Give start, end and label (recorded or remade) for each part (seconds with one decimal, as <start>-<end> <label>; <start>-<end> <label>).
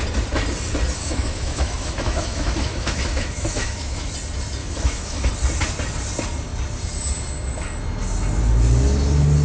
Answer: 0.0-1.0 recorded; 1.0-4.1 remade; 4.1-4.6 recorded; 4.6-5.3 remade; 5.3-9.4 recorded